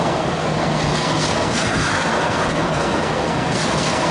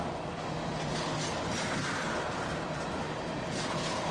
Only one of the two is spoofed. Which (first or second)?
first